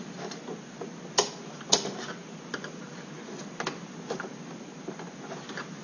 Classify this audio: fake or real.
real